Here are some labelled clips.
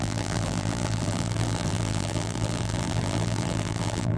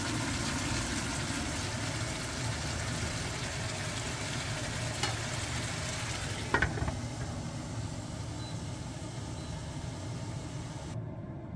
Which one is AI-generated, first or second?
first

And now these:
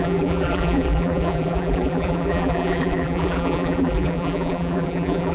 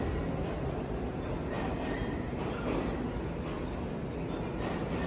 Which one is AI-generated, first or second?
first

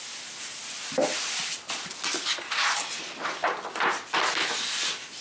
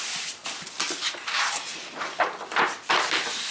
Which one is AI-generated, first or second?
second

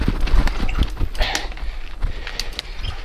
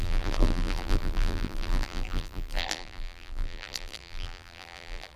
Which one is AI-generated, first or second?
second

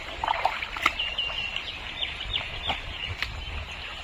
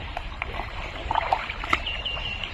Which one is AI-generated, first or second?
second